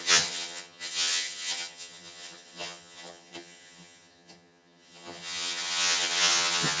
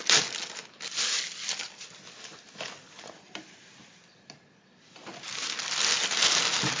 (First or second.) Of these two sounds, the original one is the second